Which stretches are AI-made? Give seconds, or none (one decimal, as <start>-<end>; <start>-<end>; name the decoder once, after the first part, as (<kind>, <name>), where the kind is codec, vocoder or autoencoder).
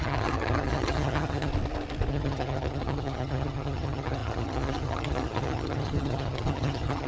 0.0-1.5 (vocoder, HiFi-GAN); 2.1-7.1